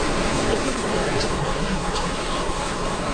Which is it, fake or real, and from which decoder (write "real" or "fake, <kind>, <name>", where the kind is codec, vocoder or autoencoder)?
fake, codec, SNAC